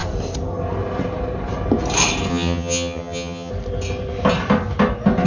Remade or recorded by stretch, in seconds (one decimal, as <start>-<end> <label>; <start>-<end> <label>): 0.0-2.3 recorded; 2.3-3.5 remade; 3.5-5.3 recorded